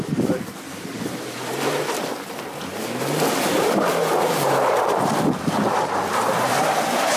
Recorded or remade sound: remade